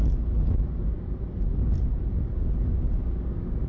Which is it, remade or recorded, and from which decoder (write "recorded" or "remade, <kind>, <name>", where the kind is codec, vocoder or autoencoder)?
recorded